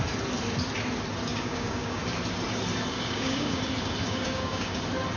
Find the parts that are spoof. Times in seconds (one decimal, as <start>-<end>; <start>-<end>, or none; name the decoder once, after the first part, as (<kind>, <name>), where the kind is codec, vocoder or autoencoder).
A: 1.3-2.0 (codec, DAC); 2.9-3.6; 4.0-4.8